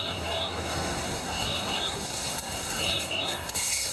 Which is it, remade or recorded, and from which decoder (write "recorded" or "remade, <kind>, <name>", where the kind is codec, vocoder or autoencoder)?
remade, codec, SNAC